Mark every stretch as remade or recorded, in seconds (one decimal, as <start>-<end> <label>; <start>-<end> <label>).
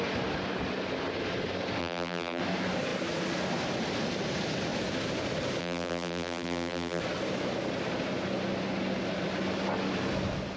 0.0-1.8 recorded; 1.8-2.4 remade; 2.4-5.6 recorded; 5.6-7.0 remade; 7.0-10.6 recorded